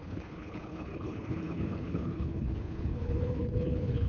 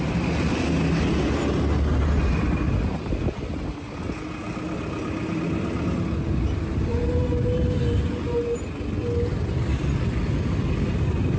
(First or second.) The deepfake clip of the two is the first